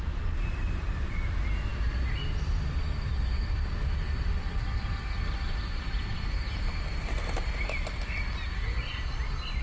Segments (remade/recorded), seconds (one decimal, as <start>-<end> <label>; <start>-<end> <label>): 0.0-9.6 recorded